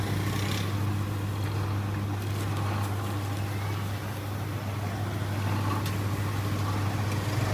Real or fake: real